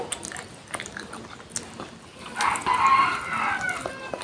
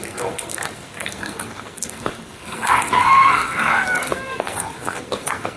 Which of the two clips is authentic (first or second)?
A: first